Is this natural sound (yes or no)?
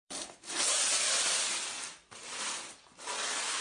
no